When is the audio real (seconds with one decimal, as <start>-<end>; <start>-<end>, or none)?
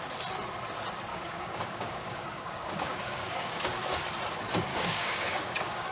0.0-1.1; 4.0-4.7